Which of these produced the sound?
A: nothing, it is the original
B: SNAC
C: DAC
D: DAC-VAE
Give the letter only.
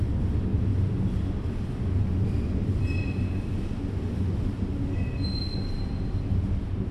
A